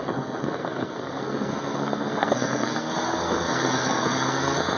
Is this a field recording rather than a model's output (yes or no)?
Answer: no